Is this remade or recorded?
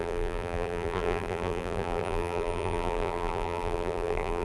remade